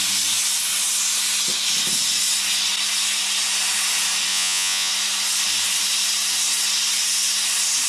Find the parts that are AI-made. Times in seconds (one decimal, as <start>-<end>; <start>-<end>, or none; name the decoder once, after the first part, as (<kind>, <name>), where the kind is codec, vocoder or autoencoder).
4.3-4.9 (vocoder, Vocos)